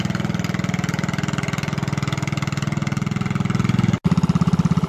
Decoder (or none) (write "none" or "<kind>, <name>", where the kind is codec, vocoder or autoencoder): none